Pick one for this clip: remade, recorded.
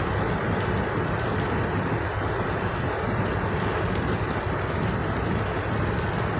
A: recorded